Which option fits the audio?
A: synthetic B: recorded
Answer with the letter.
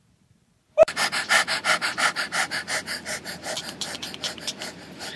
A